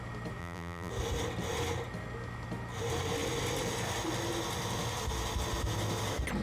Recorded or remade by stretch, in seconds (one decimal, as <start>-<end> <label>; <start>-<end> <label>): 0.0-0.4 recorded; 0.4-0.9 remade; 0.9-6.4 recorded